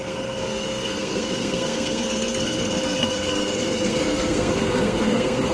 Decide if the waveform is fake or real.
fake